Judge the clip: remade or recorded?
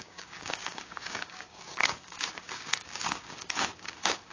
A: remade